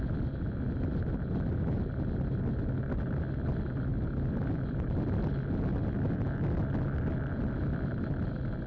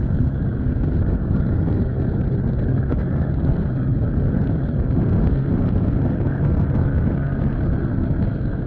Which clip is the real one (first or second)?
first